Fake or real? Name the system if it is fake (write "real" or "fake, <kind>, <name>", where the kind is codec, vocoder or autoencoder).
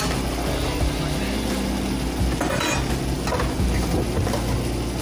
real